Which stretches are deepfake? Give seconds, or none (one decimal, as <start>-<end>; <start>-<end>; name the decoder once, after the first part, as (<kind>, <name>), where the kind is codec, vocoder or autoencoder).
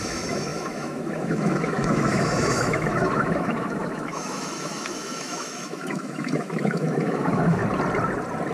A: 0.0-7.6 (autoencoder, DAC-VAE)